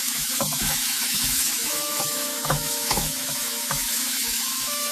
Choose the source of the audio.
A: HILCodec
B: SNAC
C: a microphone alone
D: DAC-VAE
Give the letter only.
D